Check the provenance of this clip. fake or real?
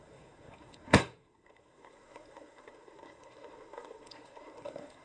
fake